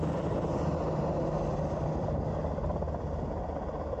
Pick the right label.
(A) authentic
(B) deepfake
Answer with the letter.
A